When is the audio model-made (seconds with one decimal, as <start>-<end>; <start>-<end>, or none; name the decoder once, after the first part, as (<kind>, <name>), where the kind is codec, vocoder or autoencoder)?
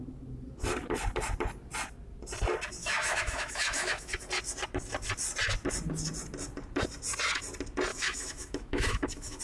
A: 2.8-4.2 (autoencoder, DAC-VAE); 7.9-9.4